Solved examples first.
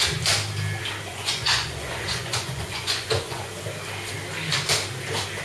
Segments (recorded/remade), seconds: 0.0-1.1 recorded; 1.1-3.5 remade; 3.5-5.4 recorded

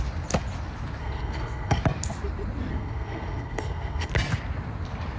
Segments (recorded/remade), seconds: 0.0-1.0 recorded; 1.0-1.8 remade; 1.8-2.7 recorded; 2.7-4.1 remade; 4.1-5.2 recorded

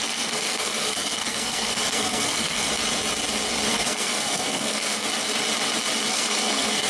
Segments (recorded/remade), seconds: 0.0-2.7 remade; 2.7-3.7 recorded; 3.7-5.0 remade; 5.0-6.1 recorded; 6.1-6.9 remade